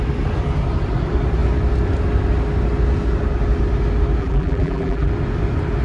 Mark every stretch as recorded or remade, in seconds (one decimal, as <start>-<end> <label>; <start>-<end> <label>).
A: 0.0-4.2 recorded; 4.2-5.1 remade; 5.1-5.8 recorded